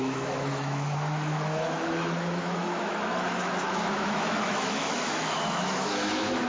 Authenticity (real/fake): fake